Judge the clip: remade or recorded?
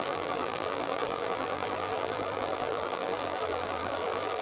remade